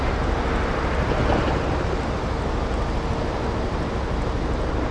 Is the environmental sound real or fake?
real